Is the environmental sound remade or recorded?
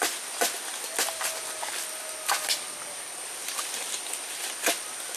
recorded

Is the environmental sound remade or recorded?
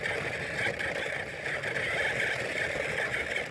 recorded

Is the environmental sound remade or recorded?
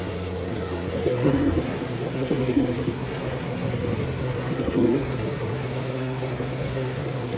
remade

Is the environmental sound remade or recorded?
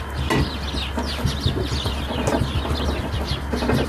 recorded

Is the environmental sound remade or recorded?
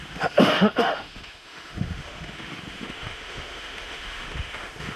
remade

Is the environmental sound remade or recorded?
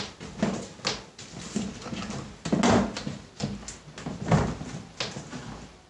recorded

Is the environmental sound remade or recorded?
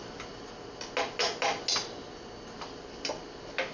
recorded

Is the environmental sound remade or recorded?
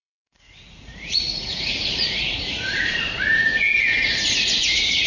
remade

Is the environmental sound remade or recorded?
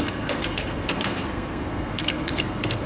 remade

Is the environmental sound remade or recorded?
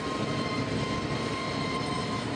recorded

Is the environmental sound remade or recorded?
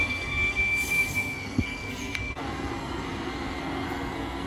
remade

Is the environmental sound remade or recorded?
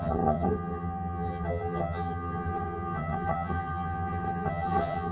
remade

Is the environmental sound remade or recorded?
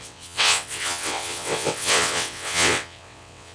remade